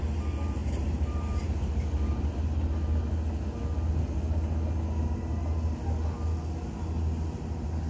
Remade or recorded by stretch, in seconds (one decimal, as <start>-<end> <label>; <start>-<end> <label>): 0.0-0.6 recorded; 0.6-1.3 remade; 1.3-7.9 recorded